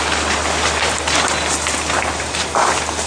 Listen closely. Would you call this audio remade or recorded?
recorded